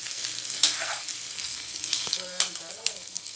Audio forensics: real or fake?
fake